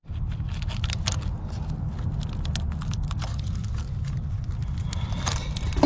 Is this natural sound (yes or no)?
yes